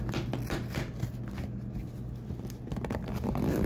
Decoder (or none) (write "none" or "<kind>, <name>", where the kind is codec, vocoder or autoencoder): none